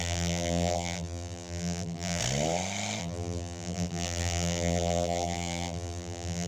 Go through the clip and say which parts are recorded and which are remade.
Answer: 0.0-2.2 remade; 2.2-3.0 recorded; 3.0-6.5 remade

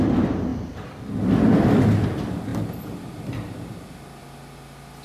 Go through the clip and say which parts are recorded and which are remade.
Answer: 0.0-5.0 recorded

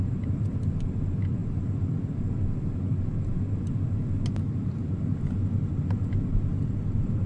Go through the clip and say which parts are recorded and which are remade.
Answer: 0.0-1.4 recorded; 1.4-2.1 remade; 2.1-6.5 recorded; 6.5-7.3 remade